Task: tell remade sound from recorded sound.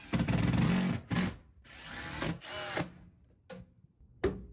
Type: recorded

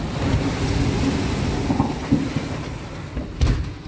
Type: recorded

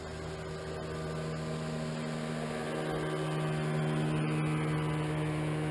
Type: recorded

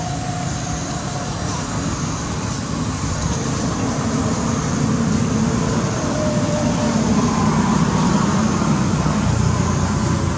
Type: recorded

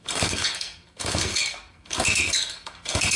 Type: remade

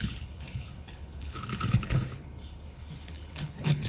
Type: remade